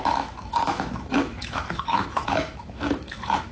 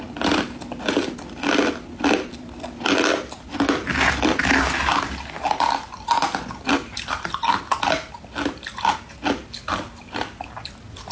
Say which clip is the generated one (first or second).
first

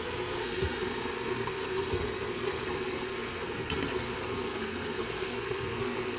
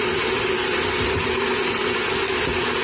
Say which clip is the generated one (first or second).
first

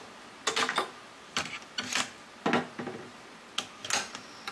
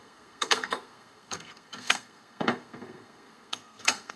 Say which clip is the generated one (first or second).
second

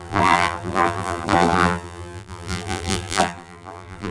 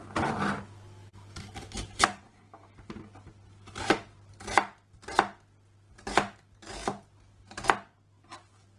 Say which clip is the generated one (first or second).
first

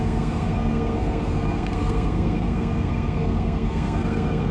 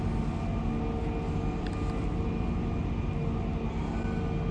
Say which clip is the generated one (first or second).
first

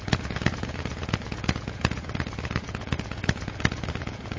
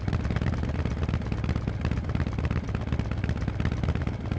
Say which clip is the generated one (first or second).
first